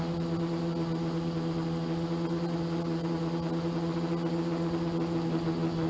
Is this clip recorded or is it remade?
recorded